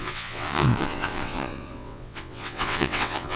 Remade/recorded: remade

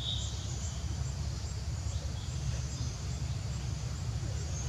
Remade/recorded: remade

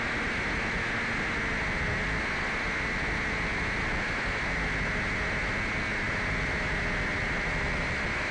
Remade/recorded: recorded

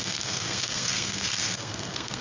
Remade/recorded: remade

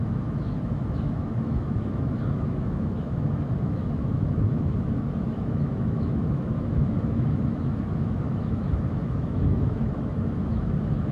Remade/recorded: remade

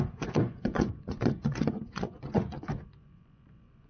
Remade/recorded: remade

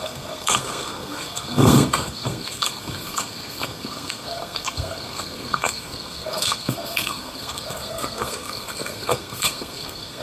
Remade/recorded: remade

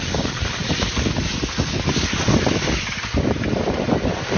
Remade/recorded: recorded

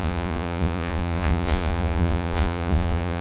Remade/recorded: remade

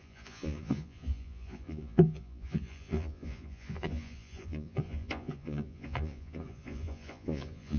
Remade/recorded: remade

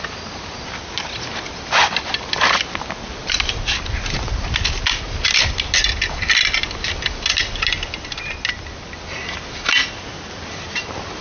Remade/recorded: recorded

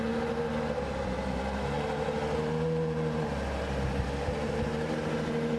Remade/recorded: recorded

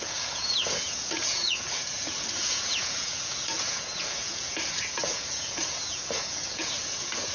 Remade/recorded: remade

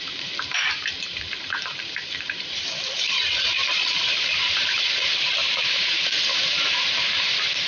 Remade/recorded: remade